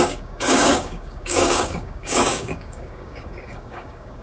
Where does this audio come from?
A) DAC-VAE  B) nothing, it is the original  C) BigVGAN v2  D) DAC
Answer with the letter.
D